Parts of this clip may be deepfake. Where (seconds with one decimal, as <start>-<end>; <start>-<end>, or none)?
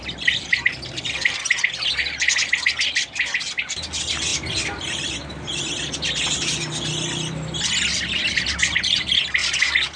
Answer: 4.3-5.4